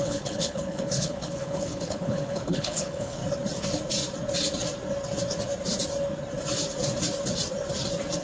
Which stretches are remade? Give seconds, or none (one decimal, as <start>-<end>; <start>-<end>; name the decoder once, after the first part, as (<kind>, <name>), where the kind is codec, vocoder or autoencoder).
0.0-3.2 (codec, HILCodec)